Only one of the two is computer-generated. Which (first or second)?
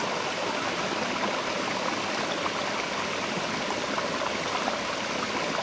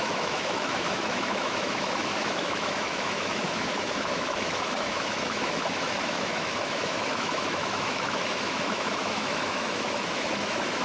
second